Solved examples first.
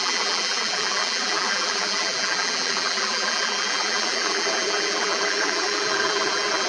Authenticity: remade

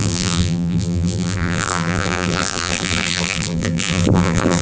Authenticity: remade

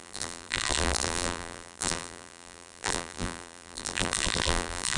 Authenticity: remade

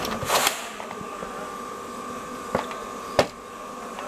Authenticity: remade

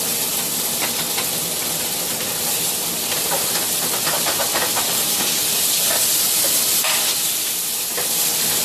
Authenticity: recorded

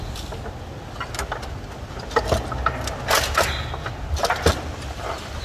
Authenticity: recorded